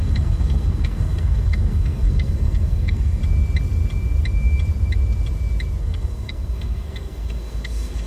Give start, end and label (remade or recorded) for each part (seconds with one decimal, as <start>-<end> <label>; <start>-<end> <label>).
0.0-3.2 remade; 3.2-5.8 recorded; 5.8-8.1 remade